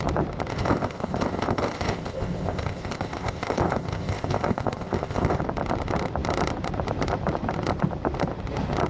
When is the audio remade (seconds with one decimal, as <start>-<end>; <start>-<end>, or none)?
0.5-5.4